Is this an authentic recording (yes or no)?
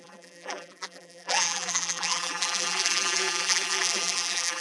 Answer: no